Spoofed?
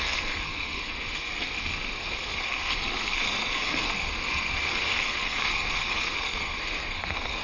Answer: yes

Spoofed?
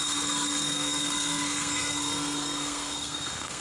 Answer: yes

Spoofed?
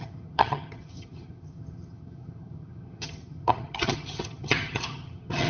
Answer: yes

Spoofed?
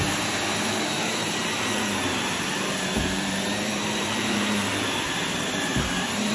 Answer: yes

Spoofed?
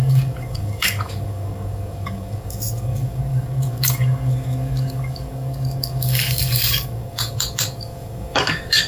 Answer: yes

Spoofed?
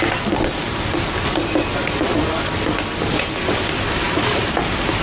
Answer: no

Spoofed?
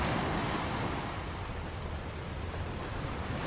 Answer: no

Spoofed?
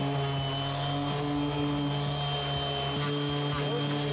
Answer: no